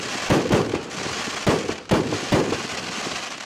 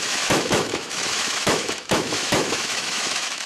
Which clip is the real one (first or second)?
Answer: first